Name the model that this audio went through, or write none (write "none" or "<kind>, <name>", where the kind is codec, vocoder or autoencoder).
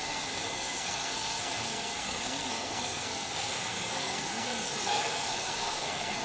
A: codec, SNAC